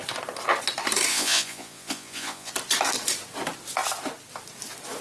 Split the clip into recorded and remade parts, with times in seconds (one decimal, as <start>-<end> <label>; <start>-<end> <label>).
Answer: 0.0-1.1 recorded; 1.1-2.5 remade; 2.5-5.0 recorded